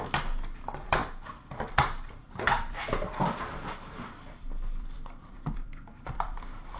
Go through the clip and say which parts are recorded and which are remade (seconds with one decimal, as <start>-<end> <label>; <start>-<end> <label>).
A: 0.0-6.8 remade